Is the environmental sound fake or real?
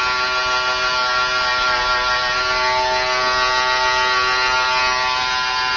real